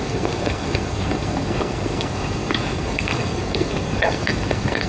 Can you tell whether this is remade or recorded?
remade